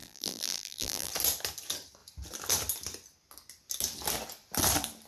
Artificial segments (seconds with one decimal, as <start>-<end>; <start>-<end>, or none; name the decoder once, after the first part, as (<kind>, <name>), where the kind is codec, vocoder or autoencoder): 0.0-1.1 (vocoder, BigVGAN v2)